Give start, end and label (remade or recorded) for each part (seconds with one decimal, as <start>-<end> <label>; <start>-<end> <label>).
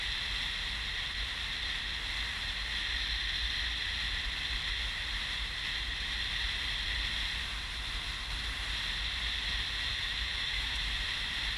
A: 0.0-9.9 recorded; 9.9-10.8 remade; 10.8-11.6 recorded